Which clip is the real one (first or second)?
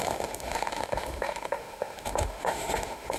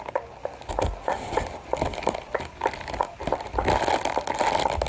second